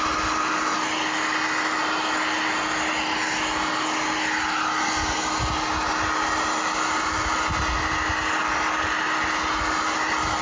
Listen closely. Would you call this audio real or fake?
real